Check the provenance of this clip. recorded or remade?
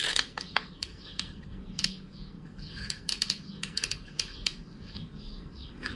remade